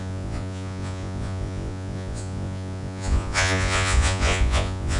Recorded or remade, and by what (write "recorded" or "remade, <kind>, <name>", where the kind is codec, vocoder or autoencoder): remade, vocoder, Vocos